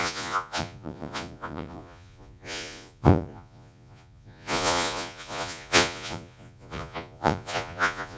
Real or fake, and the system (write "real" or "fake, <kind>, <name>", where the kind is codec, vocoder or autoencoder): fake, vocoder, Vocos